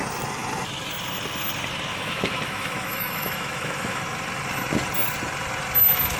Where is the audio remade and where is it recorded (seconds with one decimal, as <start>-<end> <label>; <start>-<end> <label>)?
0.0-1.9 recorded; 1.9-4.0 remade; 4.0-6.2 recorded